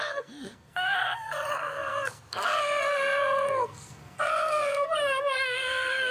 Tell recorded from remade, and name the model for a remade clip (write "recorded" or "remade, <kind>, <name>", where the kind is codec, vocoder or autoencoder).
remade, codec, SNAC